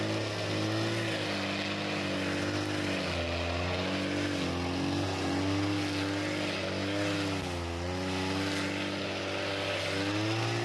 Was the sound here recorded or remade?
recorded